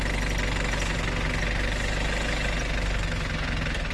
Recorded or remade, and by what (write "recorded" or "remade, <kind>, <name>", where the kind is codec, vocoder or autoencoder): recorded